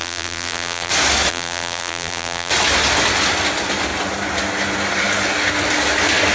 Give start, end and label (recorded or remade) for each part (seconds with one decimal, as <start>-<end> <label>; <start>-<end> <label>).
0.0-0.9 remade; 0.9-1.3 recorded; 1.3-2.5 remade; 2.5-6.3 recorded